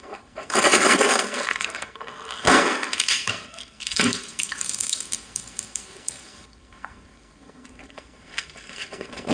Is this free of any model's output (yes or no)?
no